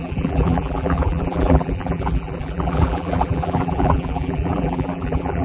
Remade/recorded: remade